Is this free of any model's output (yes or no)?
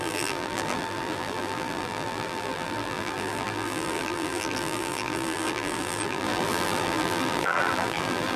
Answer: no